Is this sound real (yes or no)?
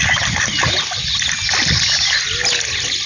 yes